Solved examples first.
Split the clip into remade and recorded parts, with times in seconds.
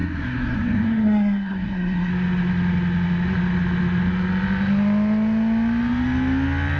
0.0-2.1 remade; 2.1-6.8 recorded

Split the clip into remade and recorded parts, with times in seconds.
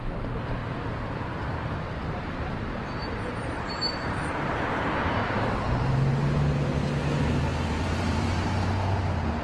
0.0-0.6 recorded; 0.6-5.8 remade; 5.8-7.5 recorded; 7.5-8.5 remade; 8.5-9.4 recorded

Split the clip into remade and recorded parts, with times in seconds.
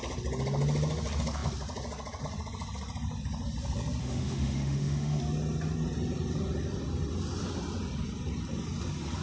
0.0-4.0 recorded; 4.0-5.2 remade; 5.2-9.2 recorded